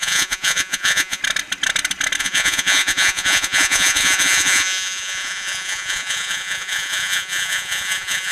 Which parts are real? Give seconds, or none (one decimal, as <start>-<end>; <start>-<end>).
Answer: 1.2-2.2